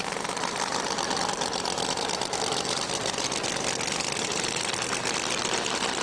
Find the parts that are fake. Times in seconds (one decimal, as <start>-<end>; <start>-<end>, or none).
0.0-4.7